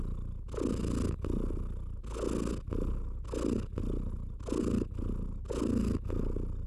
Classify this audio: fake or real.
real